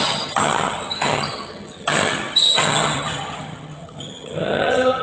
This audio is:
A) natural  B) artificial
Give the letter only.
B